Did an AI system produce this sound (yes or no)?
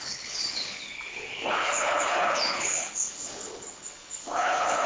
yes